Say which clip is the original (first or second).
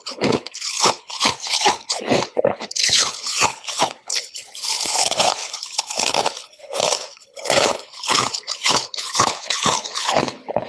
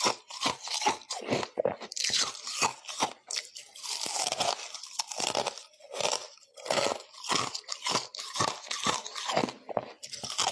second